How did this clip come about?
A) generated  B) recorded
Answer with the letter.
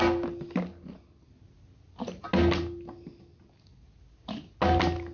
B